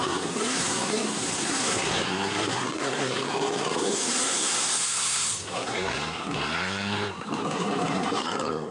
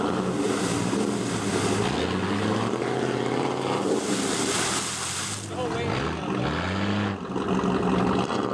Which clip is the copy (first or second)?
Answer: first